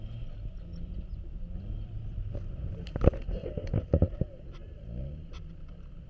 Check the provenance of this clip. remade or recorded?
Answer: recorded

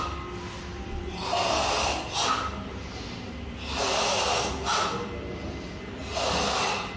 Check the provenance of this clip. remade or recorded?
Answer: recorded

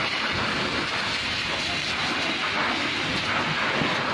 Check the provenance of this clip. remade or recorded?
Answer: recorded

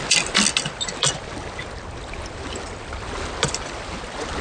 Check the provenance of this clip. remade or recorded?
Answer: recorded